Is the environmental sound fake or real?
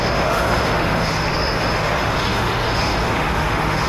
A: fake